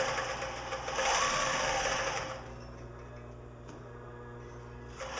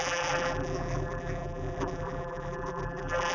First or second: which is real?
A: first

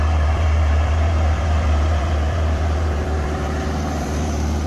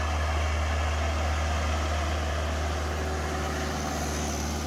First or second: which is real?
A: second